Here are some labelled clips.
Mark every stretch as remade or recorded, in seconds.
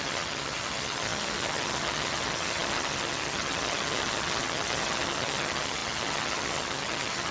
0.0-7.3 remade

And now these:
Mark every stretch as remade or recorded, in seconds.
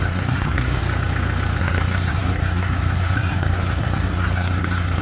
0.0-0.8 remade; 0.8-1.6 recorded; 1.6-5.0 remade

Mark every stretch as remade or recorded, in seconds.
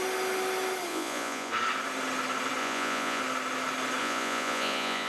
0.0-0.9 recorded; 0.9-1.5 remade; 1.5-2.6 recorded; 2.6-3.2 remade; 3.2-4.0 recorded; 4.0-5.1 remade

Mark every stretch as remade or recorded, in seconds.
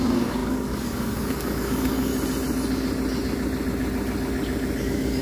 0.0-2.1 remade; 2.1-4.8 recorded; 4.8-5.2 remade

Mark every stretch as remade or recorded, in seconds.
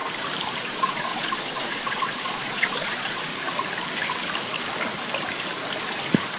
0.0-0.6 recorded; 0.6-3.3 remade; 3.3-6.4 recorded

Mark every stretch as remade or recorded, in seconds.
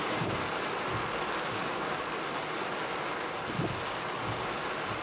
0.0-0.4 remade; 0.4-1.5 recorded; 1.5-1.9 remade; 1.9-5.0 recorded